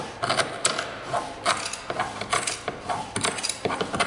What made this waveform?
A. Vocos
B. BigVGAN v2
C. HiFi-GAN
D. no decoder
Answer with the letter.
D